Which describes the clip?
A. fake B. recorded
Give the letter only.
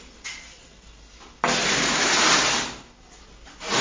B